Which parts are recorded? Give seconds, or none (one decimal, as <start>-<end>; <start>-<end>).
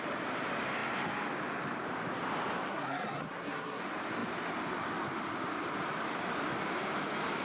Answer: 0.0-2.7; 3.8-7.4